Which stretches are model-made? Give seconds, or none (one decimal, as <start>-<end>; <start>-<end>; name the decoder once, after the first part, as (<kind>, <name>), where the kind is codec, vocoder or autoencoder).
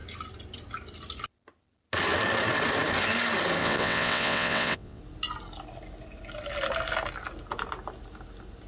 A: 3.6-5.0 (vocoder, WaveNeXt)